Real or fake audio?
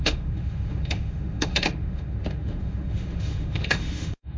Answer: fake